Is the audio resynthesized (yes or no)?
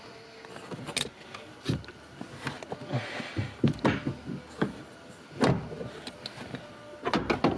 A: no